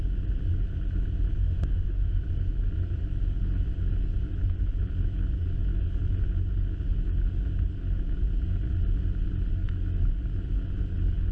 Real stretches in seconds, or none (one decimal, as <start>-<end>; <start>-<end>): 0.0-1.4; 2.2-11.3